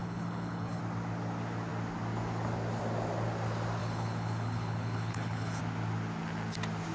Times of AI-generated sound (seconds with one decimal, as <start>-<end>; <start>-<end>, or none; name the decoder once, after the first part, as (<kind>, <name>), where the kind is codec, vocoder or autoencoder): 0.0-0.8 (codec, HILCodec); 3.8-5.6